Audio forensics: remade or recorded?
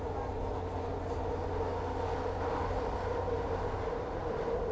recorded